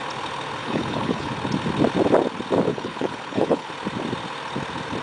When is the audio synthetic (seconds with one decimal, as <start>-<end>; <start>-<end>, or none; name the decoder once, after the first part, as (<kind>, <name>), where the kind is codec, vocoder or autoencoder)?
0.6-1.3 (codec, HILCodec); 2.7-3.7